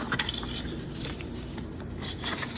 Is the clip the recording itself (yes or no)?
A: yes